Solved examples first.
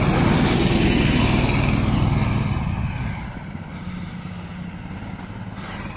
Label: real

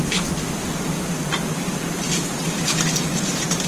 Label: fake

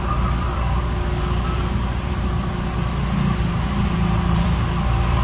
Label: fake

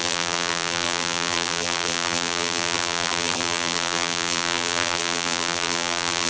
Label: fake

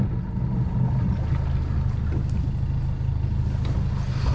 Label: real